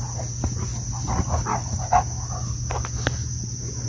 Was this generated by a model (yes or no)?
no